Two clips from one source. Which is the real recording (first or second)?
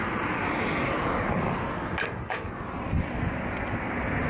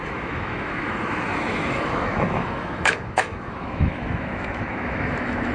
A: first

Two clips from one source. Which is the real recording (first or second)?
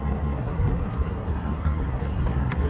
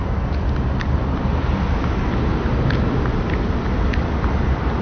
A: second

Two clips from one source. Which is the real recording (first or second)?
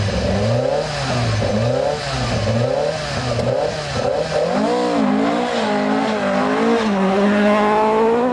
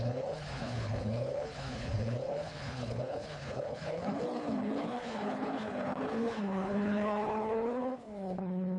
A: first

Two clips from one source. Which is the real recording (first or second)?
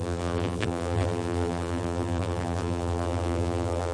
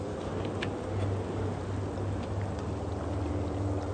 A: second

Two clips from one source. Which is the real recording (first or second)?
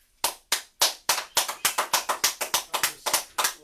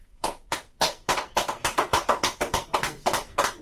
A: first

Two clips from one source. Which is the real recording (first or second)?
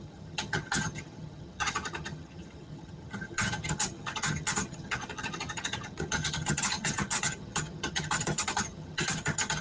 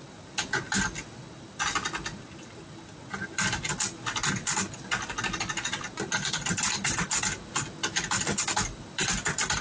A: second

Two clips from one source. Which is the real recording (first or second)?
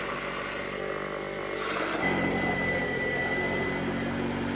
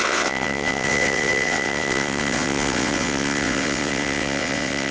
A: first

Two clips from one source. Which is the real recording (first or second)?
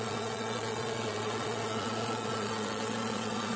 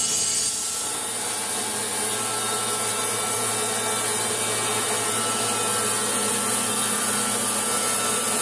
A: second